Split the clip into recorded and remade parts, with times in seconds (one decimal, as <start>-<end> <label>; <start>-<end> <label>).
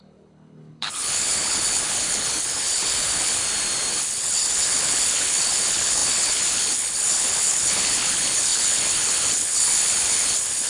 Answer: 0.0-3.4 remade; 3.4-3.9 recorded; 3.9-10.7 remade